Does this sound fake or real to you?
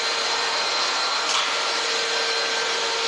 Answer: real